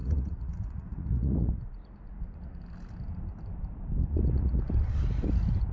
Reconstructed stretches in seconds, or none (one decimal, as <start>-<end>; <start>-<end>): 0.0-2.6; 4.0-4.6